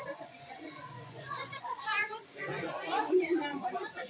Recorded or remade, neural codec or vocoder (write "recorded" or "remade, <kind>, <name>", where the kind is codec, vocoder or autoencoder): remade, vocoder, Vocos